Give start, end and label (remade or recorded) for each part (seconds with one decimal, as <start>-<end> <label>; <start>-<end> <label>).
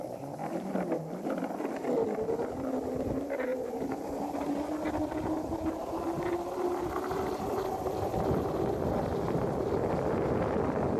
0.0-3.5 recorded; 3.5-4.3 remade; 4.3-11.0 recorded